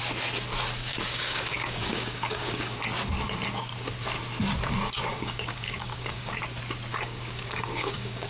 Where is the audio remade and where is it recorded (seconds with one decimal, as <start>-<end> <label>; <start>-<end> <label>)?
0.0-0.9 recorded; 0.9-2.8 remade; 2.8-5.1 recorded; 5.1-6.3 remade; 6.3-6.9 recorded; 6.9-8.3 remade